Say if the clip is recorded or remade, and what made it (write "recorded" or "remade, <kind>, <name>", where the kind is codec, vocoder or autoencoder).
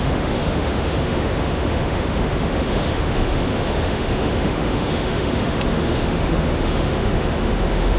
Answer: remade, autoencoder, DAC-VAE